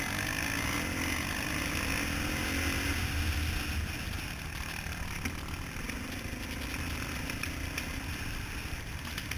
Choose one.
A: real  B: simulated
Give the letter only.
A